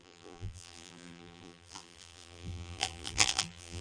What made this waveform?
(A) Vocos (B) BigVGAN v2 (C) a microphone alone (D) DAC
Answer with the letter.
B